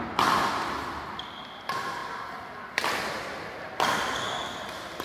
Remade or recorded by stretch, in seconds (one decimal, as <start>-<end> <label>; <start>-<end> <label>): 0.0-5.0 recorded